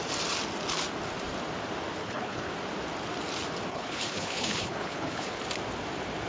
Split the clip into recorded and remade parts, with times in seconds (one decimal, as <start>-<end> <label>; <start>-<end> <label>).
0.0-2.0 recorded; 2.0-2.5 remade; 2.5-3.7 recorded; 3.7-5.4 remade; 5.4-6.3 recorded